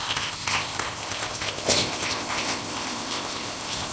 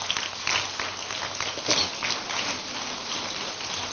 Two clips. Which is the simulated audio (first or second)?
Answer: first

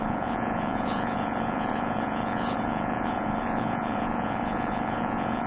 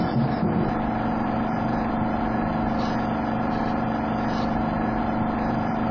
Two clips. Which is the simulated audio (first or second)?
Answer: first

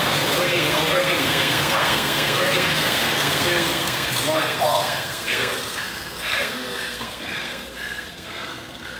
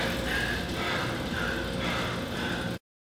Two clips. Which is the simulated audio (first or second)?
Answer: first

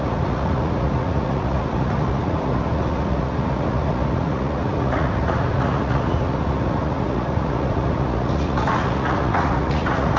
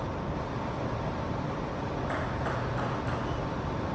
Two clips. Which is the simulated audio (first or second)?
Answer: first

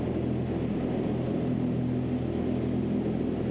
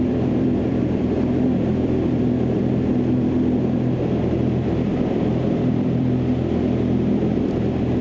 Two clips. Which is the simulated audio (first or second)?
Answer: second